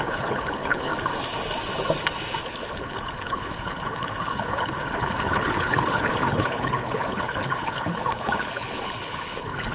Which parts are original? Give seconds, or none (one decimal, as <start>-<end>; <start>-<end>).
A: 0.9-2.4